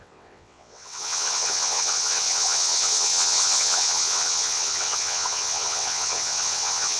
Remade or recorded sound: remade